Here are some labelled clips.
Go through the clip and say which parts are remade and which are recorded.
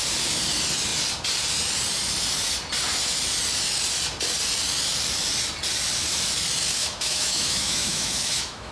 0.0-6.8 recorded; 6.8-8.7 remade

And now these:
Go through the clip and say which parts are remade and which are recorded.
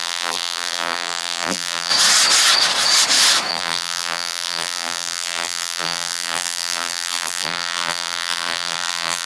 0.0-1.9 remade; 1.9-3.5 recorded; 3.5-9.3 remade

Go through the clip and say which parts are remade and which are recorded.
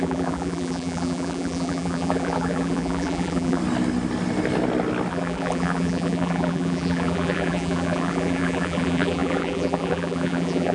0.0-3.6 remade; 3.6-5.1 recorded; 5.1-10.7 remade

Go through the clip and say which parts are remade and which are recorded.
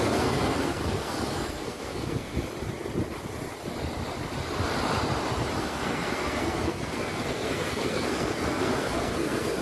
0.0-2.3 remade; 2.3-5.6 recorded; 5.6-9.6 remade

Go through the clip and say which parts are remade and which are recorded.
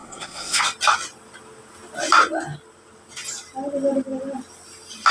0.0-0.6 remade; 0.6-5.1 recorded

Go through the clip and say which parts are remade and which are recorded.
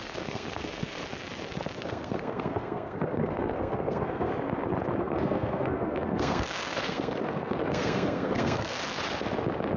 0.0-1.0 remade; 1.0-1.8 recorded; 1.8-4.3 remade; 4.3-5.0 recorded; 5.0-8.8 remade; 8.8-9.8 recorded